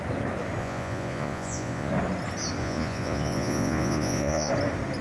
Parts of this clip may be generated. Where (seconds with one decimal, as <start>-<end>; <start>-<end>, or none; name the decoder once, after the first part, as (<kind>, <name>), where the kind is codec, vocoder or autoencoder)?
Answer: 0.6-1.9 (vocoder, Vocos); 2.6-4.5